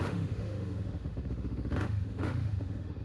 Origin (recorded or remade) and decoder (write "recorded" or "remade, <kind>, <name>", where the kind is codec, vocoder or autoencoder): remade, autoencoder, DAC-VAE